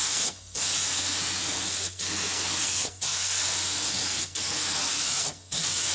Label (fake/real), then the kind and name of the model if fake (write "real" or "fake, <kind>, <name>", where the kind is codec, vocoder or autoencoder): fake, codec, SNAC